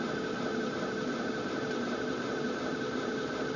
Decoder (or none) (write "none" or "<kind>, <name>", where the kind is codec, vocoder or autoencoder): none